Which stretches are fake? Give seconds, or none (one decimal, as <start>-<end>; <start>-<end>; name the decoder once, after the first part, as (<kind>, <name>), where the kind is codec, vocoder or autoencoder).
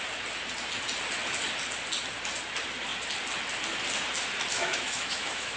4.5-5.6 (autoencoder, DAC-VAE)